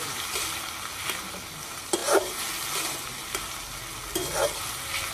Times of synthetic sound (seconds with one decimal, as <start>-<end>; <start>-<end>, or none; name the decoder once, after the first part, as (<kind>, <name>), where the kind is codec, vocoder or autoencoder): none